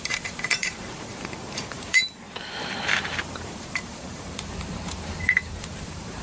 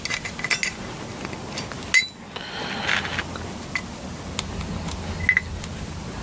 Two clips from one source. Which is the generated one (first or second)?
first